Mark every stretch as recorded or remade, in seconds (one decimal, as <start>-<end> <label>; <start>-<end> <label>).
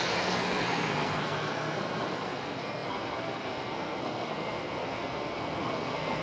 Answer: 0.0-6.2 remade